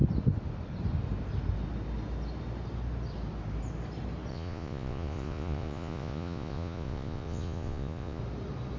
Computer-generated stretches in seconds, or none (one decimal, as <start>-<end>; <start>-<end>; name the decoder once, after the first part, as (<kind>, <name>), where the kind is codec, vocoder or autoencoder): 4.3-8.2 (vocoder, Vocos)